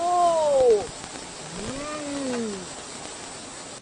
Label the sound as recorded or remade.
recorded